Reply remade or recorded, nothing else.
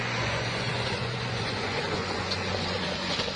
remade